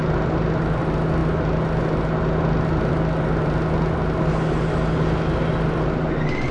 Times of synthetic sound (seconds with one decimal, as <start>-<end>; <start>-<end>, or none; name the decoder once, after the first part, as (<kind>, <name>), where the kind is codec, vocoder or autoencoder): none